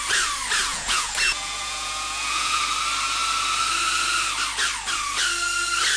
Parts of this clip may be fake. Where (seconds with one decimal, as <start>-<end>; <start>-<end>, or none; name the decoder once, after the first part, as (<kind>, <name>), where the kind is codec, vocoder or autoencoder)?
0.7-2.6 (vocoder, Vocos)